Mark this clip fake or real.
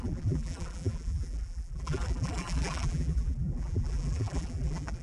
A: fake